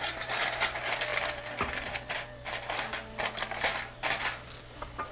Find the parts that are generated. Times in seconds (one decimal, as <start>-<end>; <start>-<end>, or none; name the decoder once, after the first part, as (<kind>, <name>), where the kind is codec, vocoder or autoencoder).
none